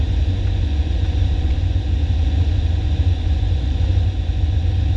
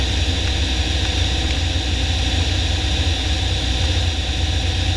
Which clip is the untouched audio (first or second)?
second